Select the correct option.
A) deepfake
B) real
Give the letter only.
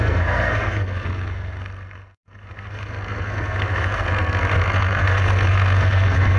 A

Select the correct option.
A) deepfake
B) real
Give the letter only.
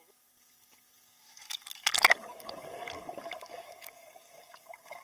A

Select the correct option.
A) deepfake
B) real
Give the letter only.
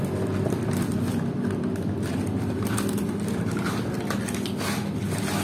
B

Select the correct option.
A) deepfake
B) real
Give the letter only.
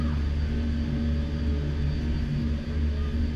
B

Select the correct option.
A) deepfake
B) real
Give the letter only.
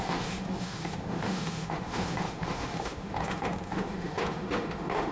A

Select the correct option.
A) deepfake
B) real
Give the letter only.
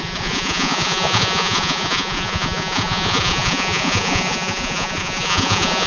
A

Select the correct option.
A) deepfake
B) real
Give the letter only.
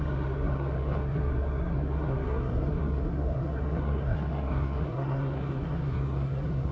A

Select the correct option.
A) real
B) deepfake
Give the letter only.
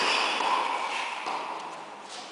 A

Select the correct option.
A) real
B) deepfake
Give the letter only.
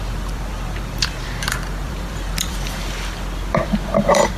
B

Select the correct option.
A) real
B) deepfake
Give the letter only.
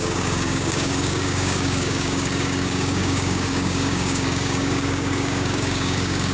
B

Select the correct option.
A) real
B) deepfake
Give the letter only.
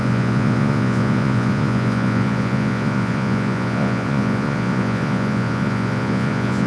B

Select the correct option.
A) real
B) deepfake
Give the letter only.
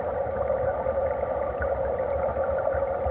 A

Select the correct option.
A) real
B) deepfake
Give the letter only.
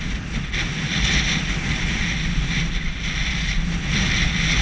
A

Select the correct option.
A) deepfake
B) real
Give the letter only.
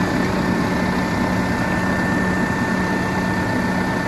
B